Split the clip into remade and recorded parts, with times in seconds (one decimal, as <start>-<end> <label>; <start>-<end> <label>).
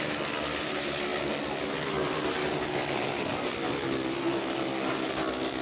0.0-5.6 recorded